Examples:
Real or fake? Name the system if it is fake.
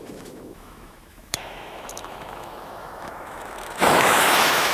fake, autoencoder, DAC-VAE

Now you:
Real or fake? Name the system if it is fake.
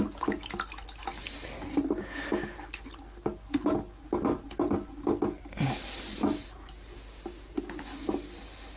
real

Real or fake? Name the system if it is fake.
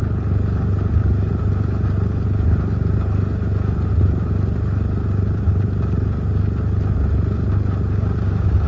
real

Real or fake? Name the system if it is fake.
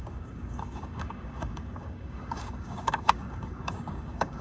fake, codec, DAC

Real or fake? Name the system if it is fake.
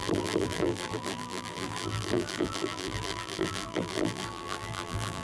fake, vocoder, BigVGAN v2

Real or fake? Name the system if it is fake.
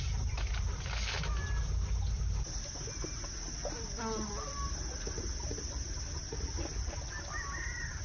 real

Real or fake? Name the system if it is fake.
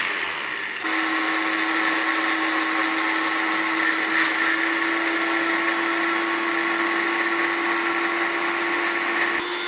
real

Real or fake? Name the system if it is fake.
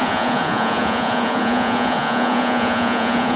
fake, vocoder, Vocos